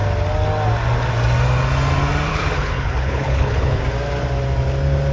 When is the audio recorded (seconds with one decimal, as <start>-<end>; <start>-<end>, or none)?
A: 0.0-2.3; 3.8-5.1